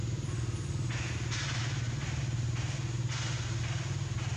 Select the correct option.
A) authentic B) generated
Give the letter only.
A